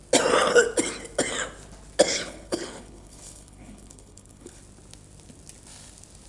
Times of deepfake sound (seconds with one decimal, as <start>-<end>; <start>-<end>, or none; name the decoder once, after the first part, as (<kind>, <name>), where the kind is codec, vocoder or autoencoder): 2.1-4.6 (codec, HILCodec)